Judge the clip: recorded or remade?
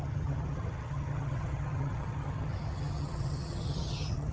remade